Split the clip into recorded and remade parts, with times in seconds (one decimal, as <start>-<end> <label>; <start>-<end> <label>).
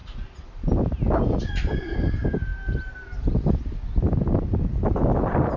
0.0-5.6 recorded